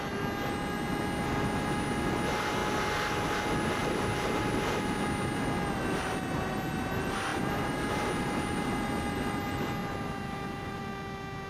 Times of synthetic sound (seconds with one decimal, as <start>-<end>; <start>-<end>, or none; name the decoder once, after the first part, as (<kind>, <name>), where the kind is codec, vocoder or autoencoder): 3.8-5.1 (vocoder, BigVGAN v2); 7.3-8.8; 9.8-10.8

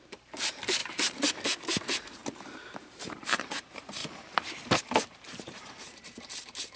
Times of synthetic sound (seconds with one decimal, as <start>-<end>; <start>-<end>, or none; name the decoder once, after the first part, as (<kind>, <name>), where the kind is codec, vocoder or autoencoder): 0.0-0.8 (vocoder, BigVGAN v2); 1.8-4.0; 4.8-6.8

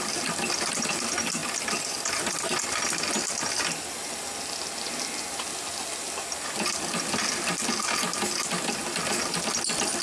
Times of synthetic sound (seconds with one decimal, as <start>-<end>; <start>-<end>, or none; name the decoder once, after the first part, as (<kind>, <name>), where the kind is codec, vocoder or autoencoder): none

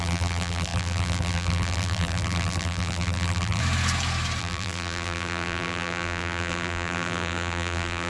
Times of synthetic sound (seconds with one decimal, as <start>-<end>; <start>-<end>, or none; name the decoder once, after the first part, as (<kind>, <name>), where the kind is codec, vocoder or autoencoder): 0.0-3.6 (vocoder, BigVGAN v2); 4.4-8.1

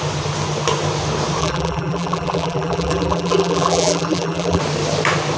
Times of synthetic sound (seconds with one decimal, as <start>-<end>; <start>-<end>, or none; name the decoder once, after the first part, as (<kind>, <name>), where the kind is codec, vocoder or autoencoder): 1.4-4.6 (vocoder, BigVGAN v2)

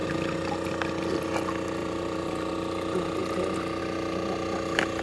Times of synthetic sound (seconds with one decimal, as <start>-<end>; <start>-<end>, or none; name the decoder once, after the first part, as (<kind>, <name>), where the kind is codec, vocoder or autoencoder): 1.8-2.5 (vocoder, BigVGAN v2)